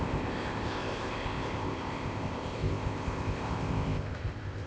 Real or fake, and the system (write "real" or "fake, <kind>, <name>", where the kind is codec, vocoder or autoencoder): fake, codec, ZipCodec